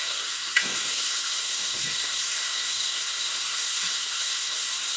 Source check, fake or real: fake